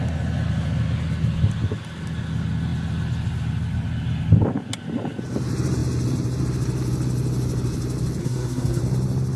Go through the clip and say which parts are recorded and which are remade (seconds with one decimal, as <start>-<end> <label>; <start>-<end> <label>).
0.0-8.2 recorded; 8.2-8.8 remade; 8.8-9.4 recorded